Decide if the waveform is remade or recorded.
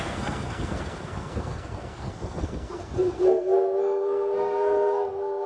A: remade